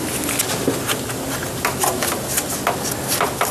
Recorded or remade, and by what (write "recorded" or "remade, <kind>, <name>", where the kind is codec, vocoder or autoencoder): recorded